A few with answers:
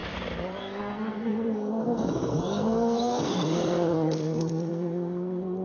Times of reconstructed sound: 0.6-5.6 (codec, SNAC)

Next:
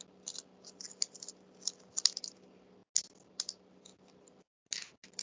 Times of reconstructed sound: none

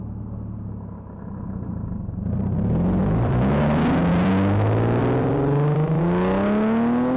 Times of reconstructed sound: 3.0-4.3 (vocoder, BigVGAN v2); 5.0-6.0

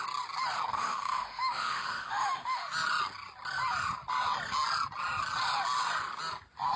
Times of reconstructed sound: 0.7-2.7 (autoencoder, DAC-VAE)

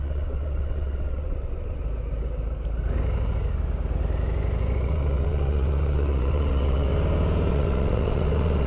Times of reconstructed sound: 0.0-1.8 (vocoder, WaveNeXt); 4.8-6.9; 7.5-8.7

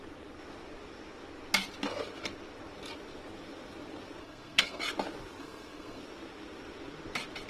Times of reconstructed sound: 4.2-4.8 (codec, SNAC); 5.4-6.0